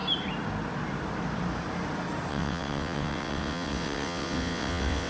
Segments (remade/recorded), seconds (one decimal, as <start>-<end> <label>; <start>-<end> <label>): 0.0-2.3 recorded; 2.3-5.1 remade